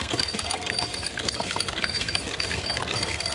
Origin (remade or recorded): remade